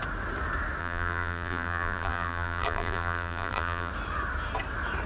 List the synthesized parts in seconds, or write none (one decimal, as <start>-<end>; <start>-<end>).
0.8-3.9